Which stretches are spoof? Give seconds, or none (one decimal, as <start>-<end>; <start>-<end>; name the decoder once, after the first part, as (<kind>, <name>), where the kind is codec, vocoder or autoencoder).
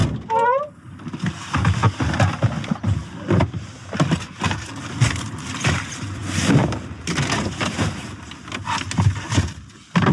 0.8-6.2 (vocoder, BigVGAN v2); 7.0-10.1